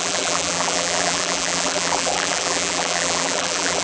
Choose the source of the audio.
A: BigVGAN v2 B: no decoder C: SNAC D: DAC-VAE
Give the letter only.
A